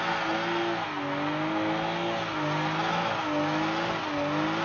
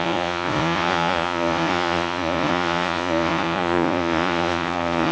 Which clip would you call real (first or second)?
first